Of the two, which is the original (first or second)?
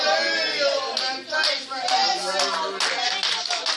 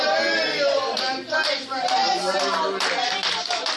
first